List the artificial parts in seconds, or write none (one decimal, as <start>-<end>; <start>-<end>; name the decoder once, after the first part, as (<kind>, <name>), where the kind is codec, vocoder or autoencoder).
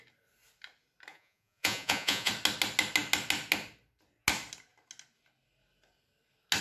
1.1-2.3 (vocoder, Vocos)